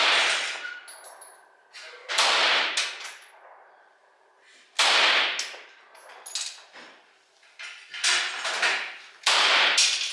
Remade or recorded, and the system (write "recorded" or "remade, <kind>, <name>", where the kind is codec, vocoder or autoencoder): recorded